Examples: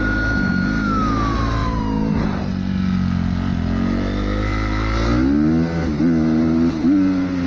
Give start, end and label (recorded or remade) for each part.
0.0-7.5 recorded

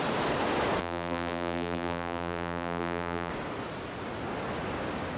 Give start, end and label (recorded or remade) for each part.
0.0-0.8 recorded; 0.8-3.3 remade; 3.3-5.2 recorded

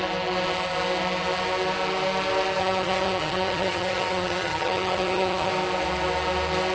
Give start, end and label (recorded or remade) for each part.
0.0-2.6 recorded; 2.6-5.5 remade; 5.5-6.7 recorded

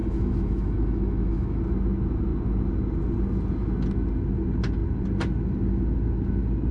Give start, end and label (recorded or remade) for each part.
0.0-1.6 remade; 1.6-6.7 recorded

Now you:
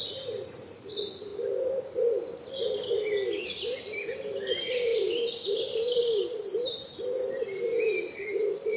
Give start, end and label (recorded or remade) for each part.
0.0-8.8 recorded